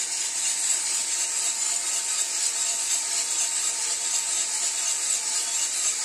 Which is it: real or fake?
real